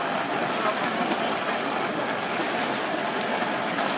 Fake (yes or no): no